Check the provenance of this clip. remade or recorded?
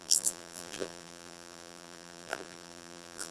remade